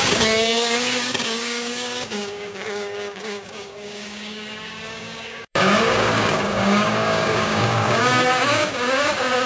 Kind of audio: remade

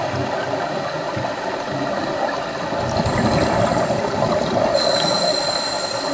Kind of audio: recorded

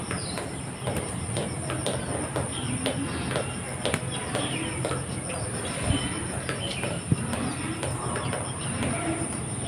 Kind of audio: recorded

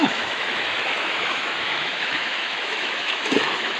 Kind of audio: remade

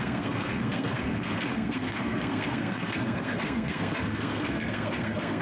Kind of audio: remade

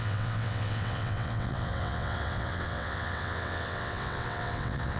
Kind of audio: remade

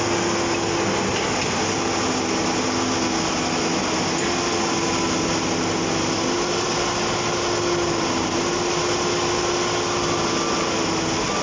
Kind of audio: recorded